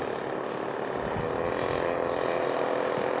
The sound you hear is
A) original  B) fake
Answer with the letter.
A